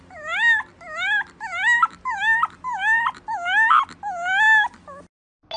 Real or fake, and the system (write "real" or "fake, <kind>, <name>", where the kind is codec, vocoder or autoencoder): real